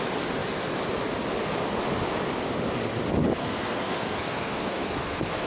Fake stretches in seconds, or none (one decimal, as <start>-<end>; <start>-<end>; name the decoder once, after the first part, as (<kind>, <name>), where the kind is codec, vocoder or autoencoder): 3.4-5.5 (codec, SNAC)